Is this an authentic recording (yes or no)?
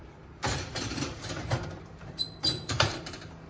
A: no